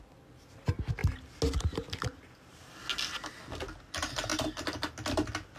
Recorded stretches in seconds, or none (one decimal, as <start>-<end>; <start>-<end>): 0.0-5.6